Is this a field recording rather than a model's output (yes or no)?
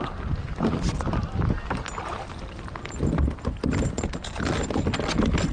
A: yes